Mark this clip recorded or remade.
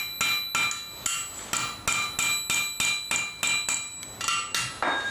recorded